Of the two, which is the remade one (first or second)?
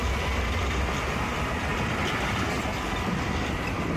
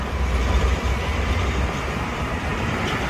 second